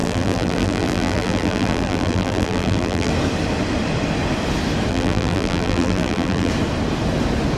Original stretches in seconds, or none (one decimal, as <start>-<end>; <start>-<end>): 3.1-4.9; 6.5-7.6